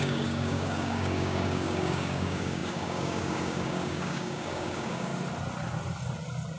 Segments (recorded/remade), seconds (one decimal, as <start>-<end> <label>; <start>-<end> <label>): 0.0-5.1 remade; 5.1-6.6 recorded